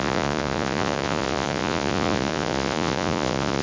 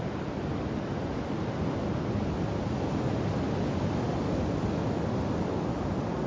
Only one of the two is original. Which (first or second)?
second